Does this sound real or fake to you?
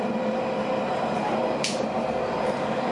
real